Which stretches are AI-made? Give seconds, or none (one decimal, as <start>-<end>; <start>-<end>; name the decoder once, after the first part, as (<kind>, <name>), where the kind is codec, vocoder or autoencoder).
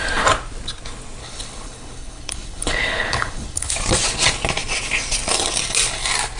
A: 1.2-3.7 (codec, HILCodec)